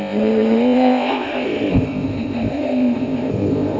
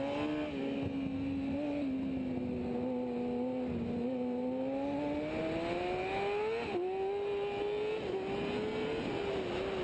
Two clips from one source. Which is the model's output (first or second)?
first